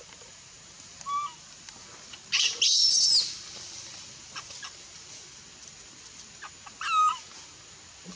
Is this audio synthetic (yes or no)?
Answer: no